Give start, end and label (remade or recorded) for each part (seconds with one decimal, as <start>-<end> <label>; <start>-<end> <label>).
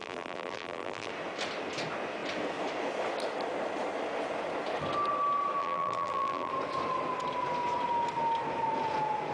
0.0-1.1 remade; 1.1-5.6 recorded; 5.6-6.5 remade; 6.5-9.3 recorded